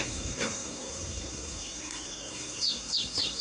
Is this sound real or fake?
fake